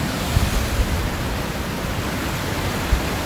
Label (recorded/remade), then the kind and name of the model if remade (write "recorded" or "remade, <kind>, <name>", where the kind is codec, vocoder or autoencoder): recorded